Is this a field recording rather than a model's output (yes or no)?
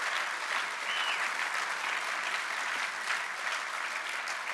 yes